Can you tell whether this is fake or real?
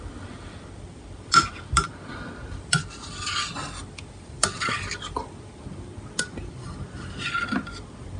real